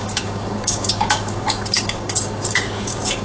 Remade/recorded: remade